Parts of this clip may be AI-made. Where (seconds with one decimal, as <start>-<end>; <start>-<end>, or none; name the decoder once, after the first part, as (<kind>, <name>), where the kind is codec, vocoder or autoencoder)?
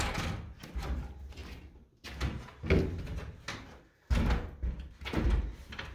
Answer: none